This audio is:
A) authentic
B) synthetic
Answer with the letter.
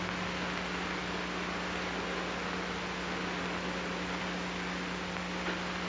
A